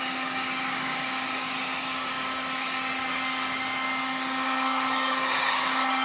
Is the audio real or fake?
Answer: fake